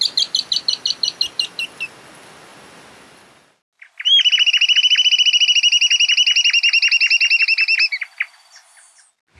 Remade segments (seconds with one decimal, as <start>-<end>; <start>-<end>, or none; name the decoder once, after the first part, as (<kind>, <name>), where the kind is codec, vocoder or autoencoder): none